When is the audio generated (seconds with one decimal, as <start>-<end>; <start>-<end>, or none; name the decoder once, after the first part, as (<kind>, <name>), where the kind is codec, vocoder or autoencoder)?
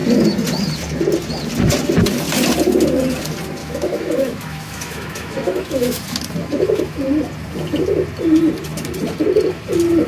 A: 3.6-6.0 (autoencoder, DAC-VAE); 6.4-7.0